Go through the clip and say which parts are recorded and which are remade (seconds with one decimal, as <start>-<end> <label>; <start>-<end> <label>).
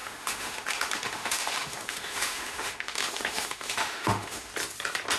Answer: 0.0-4.5 remade; 4.5-5.2 recorded